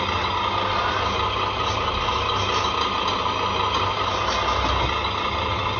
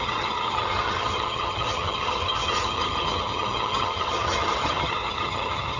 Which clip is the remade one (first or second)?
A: second